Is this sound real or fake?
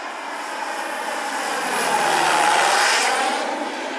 real